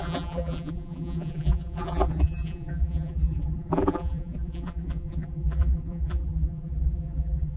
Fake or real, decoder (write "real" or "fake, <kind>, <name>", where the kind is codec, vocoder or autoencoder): fake, vocoder, BigVGAN v2